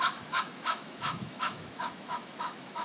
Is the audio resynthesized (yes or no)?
yes